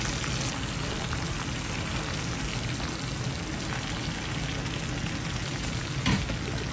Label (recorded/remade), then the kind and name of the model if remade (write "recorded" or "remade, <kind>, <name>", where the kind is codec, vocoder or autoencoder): recorded